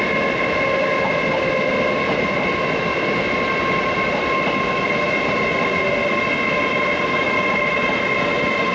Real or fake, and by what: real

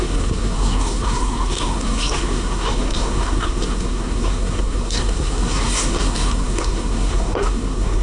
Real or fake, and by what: fake, codec, SNAC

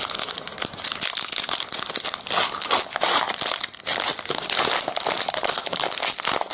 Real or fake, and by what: real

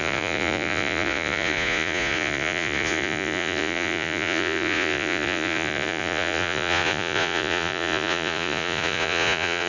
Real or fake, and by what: fake, vocoder, Vocos